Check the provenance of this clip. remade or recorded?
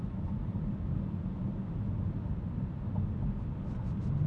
recorded